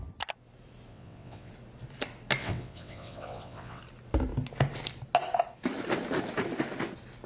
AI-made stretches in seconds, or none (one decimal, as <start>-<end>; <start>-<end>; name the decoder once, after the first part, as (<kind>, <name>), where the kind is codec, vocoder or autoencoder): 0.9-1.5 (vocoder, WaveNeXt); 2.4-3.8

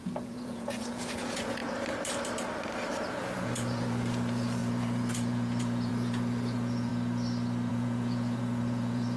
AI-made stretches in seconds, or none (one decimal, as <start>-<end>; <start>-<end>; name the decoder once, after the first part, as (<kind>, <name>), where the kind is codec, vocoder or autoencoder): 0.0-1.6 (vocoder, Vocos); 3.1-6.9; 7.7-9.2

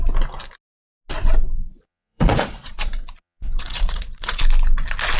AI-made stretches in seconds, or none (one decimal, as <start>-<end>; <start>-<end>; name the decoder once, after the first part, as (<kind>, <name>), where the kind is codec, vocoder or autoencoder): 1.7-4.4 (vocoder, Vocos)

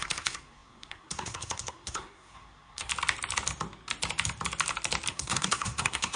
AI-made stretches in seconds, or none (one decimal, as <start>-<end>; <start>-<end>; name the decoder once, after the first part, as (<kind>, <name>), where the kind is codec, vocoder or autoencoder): 0.0-2.9 (codec, SNAC); 5.1-6.2

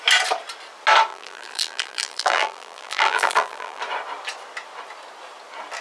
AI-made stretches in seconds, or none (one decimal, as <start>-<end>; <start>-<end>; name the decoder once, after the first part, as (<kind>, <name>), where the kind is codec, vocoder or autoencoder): 1.1-3.8 (vocoder, BigVGAN v2)

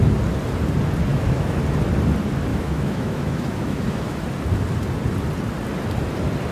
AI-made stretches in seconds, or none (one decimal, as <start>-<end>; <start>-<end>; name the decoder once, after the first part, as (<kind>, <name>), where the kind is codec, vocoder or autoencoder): 1.1-1.6 (autoencoder, DAC-VAE); 2.5-4.2

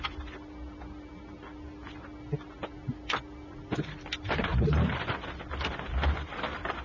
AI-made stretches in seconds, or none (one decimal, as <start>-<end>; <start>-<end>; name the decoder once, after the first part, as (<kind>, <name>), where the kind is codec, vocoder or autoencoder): 4.5-5.1 (vocoder, BigVGAN v2)

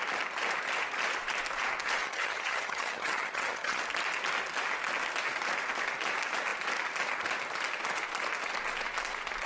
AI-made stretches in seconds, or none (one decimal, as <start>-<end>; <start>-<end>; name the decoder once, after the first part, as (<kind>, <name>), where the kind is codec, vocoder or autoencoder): 2.0-3.8 (vocoder, HiFi-GAN)